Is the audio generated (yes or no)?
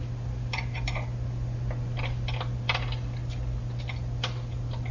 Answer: no